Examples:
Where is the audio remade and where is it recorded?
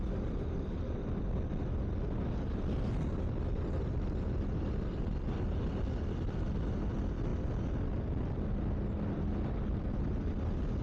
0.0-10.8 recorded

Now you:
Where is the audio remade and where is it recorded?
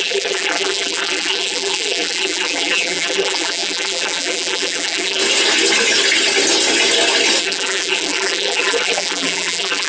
0.0-5.2 remade; 5.2-7.4 recorded; 7.4-9.9 remade